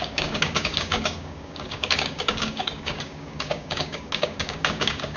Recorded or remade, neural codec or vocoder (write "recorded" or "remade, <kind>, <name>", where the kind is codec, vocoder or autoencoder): remade, codec, DAC